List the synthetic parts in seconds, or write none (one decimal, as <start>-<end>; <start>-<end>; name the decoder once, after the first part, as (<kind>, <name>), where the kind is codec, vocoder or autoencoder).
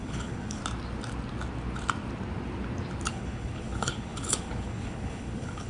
0.0-0.6 (codec, HILCodec); 3.1-5.7